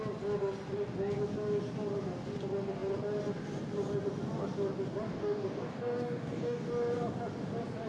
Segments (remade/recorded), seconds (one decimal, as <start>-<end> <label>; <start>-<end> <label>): 0.0-5.1 recorded; 5.1-6.7 remade; 6.7-7.9 recorded